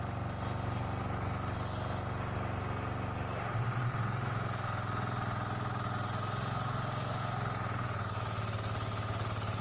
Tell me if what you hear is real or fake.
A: real